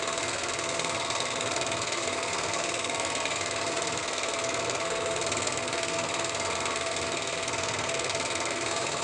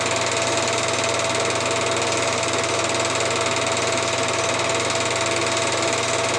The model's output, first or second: first